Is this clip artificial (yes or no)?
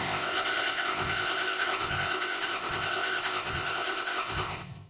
yes